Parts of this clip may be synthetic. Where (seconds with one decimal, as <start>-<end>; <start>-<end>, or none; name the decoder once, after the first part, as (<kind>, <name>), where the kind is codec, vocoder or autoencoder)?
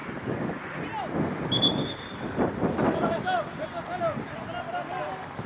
1.5-5.5 (vocoder, BigVGAN v2)